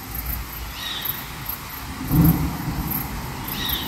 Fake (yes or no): no